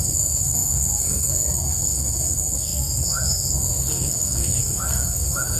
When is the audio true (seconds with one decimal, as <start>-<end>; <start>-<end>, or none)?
none

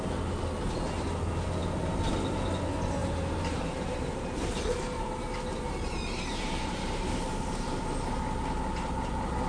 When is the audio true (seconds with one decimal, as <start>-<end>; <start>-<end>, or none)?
0.0-3.0; 7.8-9.5

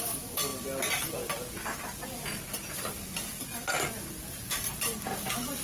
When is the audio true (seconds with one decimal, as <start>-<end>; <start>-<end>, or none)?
0.0-5.6

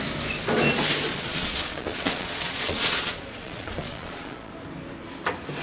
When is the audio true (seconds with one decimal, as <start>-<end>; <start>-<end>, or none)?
0.0-1.1; 4.5-5.6

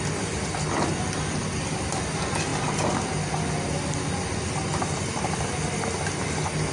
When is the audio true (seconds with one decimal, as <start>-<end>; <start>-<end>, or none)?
0.0-6.7

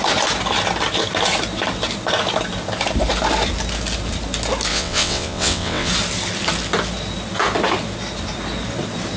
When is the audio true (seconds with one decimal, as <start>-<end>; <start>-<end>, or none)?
0.0-4.7; 5.9-9.2

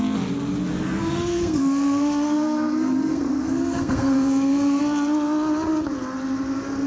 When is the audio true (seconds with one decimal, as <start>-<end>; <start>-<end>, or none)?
0.0-0.7; 4.8-6.9